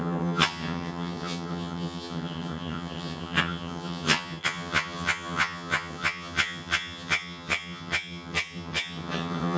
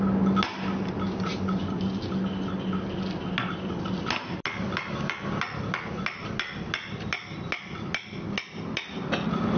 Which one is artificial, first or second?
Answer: first